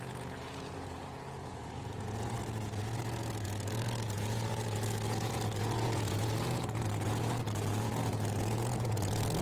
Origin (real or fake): fake